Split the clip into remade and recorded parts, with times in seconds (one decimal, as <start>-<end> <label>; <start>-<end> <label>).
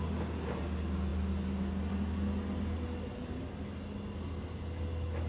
0.0-5.3 recorded